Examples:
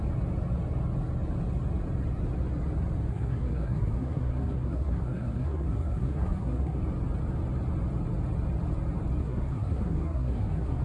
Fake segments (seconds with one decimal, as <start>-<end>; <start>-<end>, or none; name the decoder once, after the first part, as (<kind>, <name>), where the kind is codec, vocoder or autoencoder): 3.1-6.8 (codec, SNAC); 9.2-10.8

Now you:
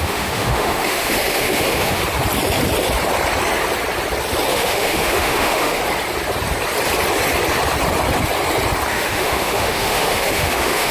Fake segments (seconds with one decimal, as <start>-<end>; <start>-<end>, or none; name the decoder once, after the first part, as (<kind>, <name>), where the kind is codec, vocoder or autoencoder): 0.0-2.0 (autoencoder, DAC-VAE); 4.5-5.8; 8.9-10.9

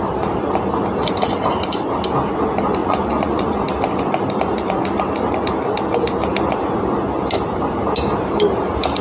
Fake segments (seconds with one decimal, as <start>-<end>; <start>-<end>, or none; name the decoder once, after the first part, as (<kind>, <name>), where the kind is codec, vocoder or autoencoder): 2.8-3.6 (vocoder, Vocos)

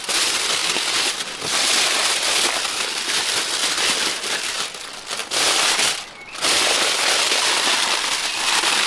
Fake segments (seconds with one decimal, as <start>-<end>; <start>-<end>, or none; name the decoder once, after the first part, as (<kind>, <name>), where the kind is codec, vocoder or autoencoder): none

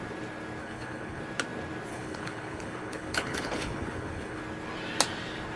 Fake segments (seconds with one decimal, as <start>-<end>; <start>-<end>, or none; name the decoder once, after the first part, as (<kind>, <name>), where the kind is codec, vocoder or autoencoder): 0.6-1.2 (codec, HILCodec); 1.9-4.4